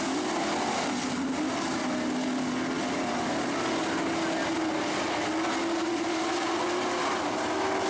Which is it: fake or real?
real